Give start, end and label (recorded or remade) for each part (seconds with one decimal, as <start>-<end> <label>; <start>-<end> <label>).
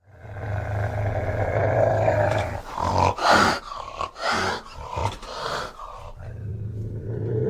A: 0.0-1.6 recorded; 1.6-4.2 remade; 4.2-5.0 recorded; 5.0-5.8 remade; 5.8-7.5 recorded